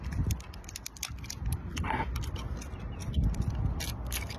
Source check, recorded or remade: recorded